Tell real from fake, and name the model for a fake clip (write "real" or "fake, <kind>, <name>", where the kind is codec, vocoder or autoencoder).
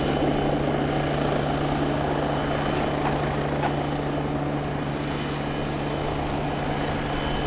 real